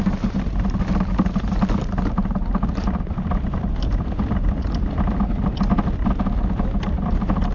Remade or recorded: recorded